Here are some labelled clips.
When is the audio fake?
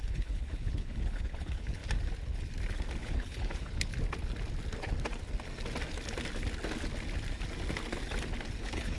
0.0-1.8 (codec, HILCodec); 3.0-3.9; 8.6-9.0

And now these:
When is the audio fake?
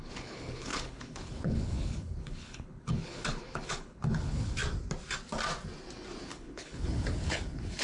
0.0-4.6 (codec, HILCodec); 6.2-7.8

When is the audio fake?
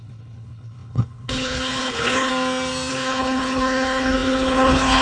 0.0-2.3 (codec, HILCodec); 2.9-5.0